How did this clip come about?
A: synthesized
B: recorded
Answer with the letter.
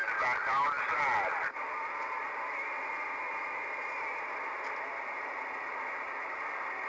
B